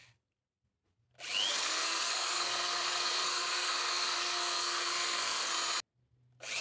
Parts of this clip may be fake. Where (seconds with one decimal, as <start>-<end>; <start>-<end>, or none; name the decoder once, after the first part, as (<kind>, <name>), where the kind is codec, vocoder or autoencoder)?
1.5-5.5 (codec, SNAC)